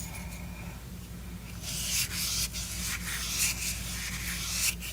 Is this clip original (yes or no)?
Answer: yes